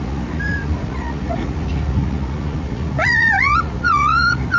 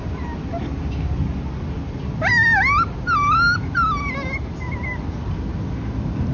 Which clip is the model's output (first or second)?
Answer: first